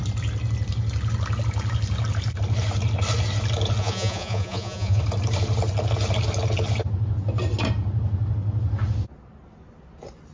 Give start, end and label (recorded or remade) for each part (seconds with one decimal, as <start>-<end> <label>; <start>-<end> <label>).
0.0-3.8 recorded; 3.8-5.0 remade; 5.0-10.3 recorded